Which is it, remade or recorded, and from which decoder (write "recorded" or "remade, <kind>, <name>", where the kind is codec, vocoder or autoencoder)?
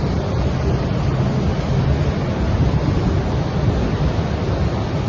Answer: recorded